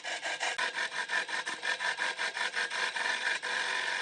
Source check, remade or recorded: recorded